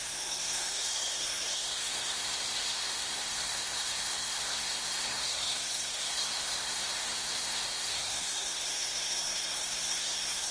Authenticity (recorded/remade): remade